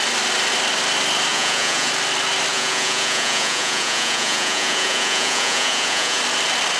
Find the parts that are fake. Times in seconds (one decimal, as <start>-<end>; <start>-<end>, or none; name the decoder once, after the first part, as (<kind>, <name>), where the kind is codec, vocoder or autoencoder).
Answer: 1.3-1.9 (vocoder, Vocos); 2.5-6.2